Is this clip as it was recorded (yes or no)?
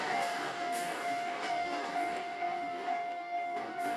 no